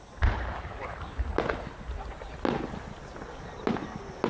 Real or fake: real